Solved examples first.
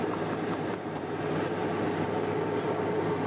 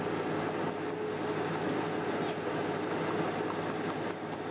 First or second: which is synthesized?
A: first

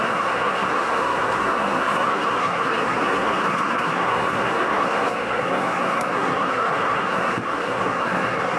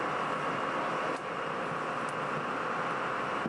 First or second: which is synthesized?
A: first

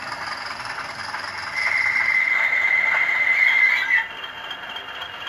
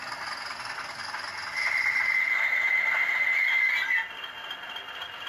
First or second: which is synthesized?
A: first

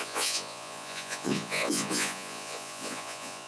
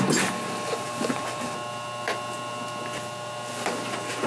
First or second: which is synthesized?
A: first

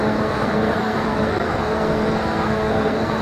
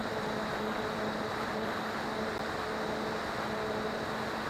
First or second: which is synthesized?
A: first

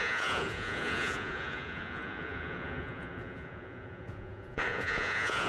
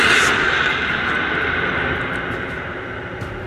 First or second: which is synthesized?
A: first